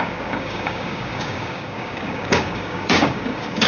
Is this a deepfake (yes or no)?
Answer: yes